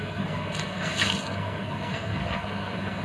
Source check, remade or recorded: remade